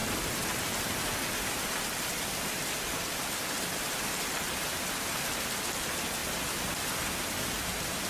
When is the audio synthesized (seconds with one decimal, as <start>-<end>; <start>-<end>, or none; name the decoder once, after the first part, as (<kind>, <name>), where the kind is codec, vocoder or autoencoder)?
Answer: none